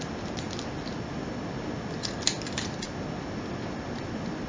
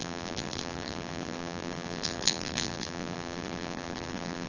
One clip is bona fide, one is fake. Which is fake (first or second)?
second